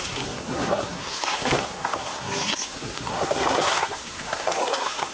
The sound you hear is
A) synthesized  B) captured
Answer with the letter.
A